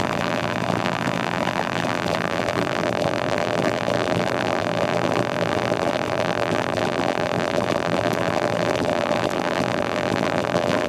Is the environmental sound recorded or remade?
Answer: remade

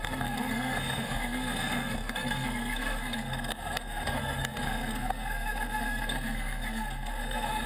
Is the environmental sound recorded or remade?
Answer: remade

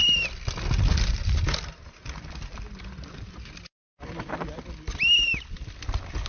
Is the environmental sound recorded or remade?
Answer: recorded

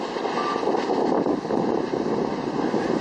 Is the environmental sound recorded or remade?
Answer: recorded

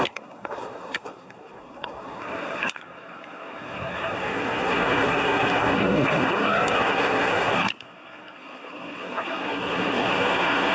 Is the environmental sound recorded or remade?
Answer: remade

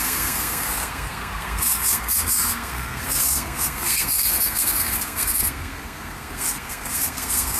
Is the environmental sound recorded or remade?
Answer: remade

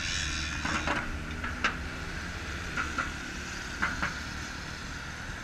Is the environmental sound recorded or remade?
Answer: recorded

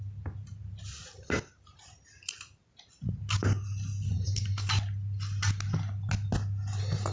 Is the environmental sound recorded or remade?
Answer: recorded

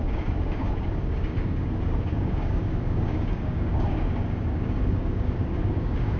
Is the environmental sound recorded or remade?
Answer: remade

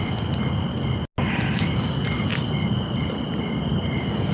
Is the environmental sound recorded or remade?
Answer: recorded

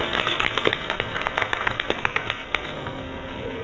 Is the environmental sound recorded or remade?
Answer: remade